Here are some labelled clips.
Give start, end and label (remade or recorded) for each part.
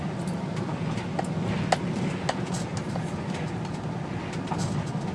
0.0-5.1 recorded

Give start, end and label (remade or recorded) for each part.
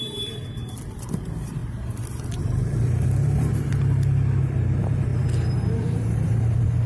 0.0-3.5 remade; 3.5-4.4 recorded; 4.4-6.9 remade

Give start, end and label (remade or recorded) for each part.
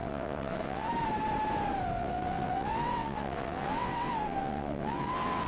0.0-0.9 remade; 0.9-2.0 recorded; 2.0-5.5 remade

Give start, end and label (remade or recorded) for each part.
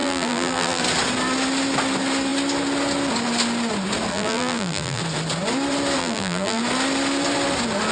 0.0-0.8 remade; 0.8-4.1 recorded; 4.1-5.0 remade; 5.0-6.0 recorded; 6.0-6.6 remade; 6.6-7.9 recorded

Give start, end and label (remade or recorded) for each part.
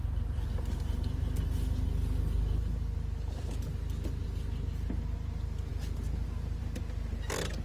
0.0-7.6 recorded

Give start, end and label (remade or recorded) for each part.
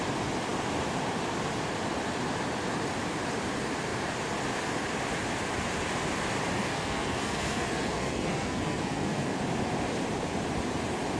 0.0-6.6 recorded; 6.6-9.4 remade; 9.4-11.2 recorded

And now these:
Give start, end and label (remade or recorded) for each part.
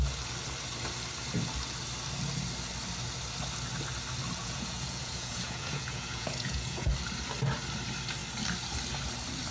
0.0-4.4 recorded; 4.4-6.9 remade; 6.9-9.5 recorded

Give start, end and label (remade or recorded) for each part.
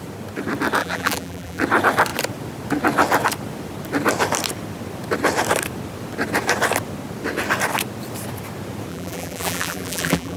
0.0-0.8 recorded; 0.8-1.6 remade; 1.6-8.9 recorded; 8.9-10.4 remade